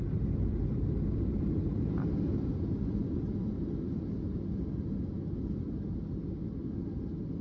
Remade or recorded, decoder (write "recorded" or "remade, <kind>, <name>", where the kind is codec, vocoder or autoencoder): recorded